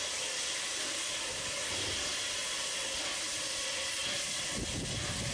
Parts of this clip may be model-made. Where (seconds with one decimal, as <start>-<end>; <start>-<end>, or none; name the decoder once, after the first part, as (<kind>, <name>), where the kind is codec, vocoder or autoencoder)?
none